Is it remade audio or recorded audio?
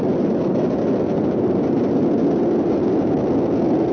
recorded